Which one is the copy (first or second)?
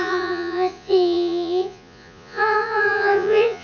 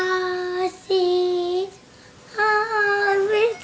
first